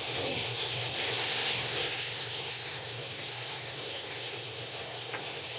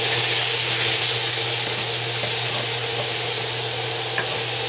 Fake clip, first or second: first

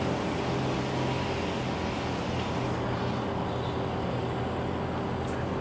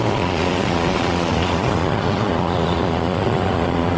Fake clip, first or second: second